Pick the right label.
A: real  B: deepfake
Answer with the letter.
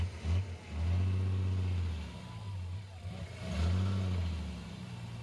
A